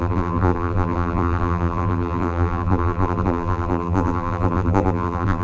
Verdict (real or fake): fake